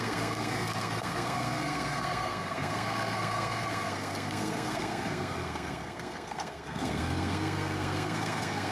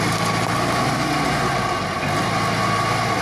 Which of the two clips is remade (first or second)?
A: first